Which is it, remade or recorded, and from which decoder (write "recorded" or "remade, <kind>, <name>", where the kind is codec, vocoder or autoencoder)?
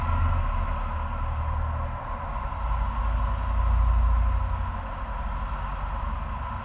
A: recorded